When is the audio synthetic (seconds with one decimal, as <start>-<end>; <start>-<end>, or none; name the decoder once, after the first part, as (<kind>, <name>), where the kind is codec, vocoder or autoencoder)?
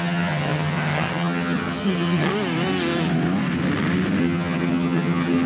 0.0-2.3 (vocoder, HiFi-GAN); 4.2-5.5